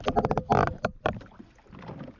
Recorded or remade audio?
recorded